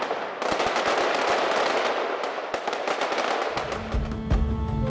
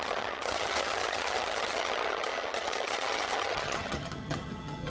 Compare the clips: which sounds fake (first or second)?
second